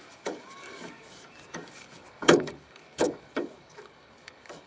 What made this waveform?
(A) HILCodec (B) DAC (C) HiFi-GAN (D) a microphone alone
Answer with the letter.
B